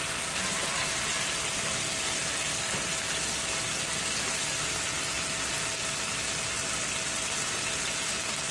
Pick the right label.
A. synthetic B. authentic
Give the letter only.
B